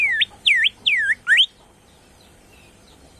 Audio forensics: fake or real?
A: real